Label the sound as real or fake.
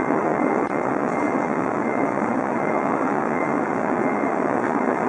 fake